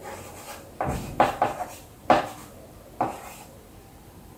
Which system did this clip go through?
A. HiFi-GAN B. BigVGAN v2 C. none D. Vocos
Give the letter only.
B